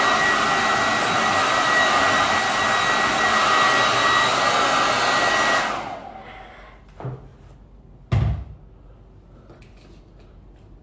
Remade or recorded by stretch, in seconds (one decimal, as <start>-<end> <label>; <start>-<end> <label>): 0.0-10.8 recorded